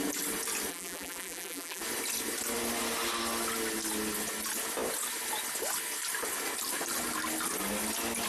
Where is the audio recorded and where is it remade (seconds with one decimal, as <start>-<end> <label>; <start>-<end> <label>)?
0.0-0.7 recorded; 0.7-1.8 remade; 1.8-8.3 recorded